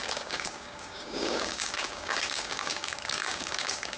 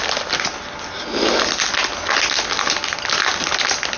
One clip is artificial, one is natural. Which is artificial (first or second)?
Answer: first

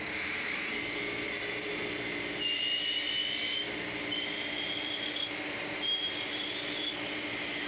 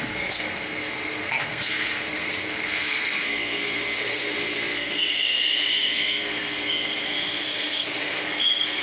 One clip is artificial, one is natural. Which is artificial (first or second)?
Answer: second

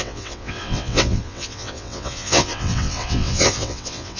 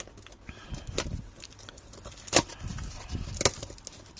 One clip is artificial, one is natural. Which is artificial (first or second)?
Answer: first